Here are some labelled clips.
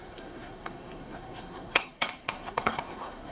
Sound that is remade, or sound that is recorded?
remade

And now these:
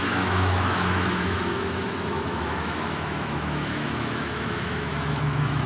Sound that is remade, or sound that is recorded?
remade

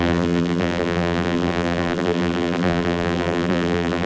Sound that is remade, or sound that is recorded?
remade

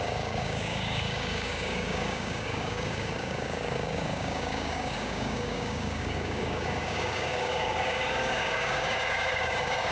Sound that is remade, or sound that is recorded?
remade